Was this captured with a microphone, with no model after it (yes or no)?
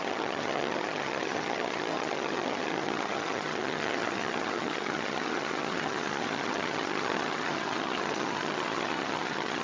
no